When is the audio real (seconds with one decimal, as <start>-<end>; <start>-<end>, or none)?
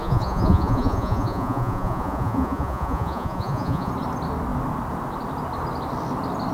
3.9-6.5